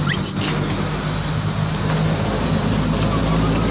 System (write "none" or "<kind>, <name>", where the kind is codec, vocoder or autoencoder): none